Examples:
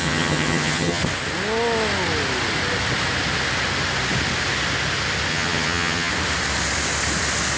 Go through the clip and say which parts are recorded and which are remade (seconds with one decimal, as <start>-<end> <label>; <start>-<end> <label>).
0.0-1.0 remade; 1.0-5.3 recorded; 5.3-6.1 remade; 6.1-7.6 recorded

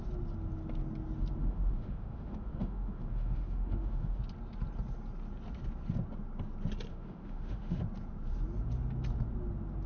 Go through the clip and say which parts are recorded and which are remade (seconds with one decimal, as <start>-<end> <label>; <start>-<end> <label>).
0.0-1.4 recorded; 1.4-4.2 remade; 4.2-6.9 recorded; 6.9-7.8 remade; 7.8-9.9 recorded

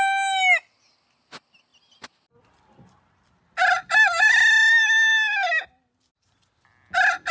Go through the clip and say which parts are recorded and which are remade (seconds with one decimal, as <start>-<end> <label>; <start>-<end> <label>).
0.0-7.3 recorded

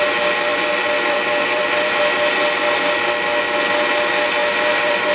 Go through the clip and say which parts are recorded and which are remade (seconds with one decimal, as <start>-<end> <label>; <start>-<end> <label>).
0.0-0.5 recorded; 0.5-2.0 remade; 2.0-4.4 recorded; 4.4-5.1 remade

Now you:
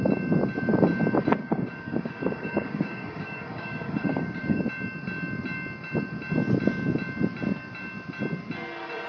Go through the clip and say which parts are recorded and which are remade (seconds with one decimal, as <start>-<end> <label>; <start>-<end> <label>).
0.0-1.4 recorded; 1.4-4.6 remade; 4.6-9.1 recorded

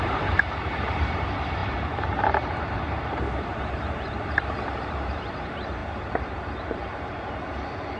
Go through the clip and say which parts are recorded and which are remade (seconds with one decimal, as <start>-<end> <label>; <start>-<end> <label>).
0.0-8.0 remade

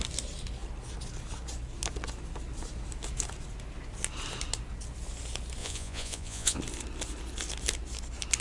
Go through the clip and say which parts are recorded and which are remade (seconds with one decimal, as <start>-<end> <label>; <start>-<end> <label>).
0.0-5.6 recorded; 5.6-6.6 remade; 6.6-8.4 recorded